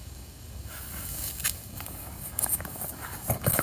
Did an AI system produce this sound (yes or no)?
yes